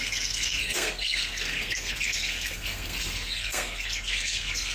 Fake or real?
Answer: fake